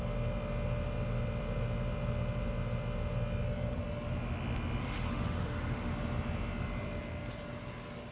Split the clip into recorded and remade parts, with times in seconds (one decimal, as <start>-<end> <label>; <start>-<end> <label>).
0.0-4.8 recorded; 4.8-5.9 remade; 5.9-8.1 recorded